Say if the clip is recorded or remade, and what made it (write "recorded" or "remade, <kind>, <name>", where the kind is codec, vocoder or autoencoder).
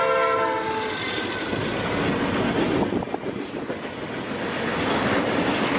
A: recorded